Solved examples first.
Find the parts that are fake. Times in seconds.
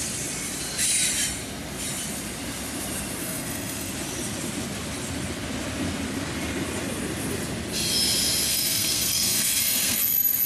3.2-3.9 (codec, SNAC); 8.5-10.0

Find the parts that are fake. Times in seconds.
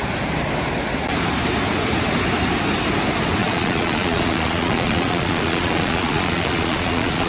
3.4-7.3 (vocoder, Vocos)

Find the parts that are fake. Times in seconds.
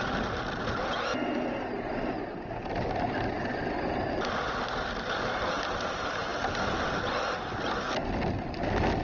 none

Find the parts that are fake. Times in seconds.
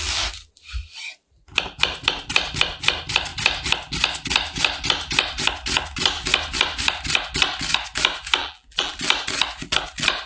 8.4-8.9 (vocoder, BigVGAN v2)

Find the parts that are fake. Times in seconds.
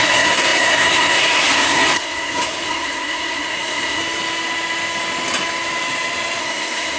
0.0-4.0 (codec, SNAC); 6.4-7.0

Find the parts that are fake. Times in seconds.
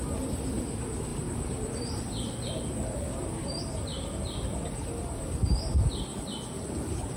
1.1-3.6 (vocoder, BigVGAN v2); 6.1-7.2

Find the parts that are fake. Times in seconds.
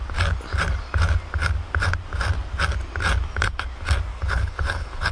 4.1-5.1 (codec, HILCodec)